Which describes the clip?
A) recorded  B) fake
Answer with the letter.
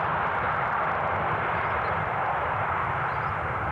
B